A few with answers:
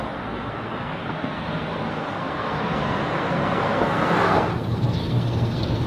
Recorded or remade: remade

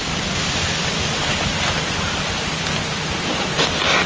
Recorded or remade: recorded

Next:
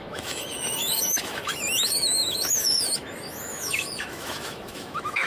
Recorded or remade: remade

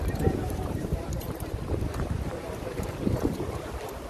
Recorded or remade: remade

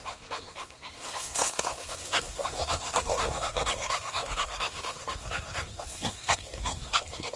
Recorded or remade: remade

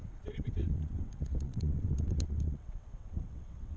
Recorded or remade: remade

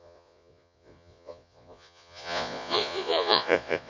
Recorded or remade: remade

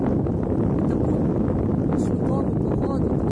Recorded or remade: recorded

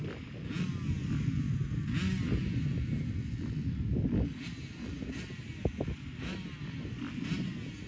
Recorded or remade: recorded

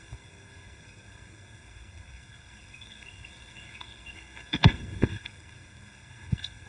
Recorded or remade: remade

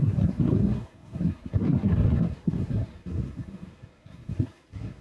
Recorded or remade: remade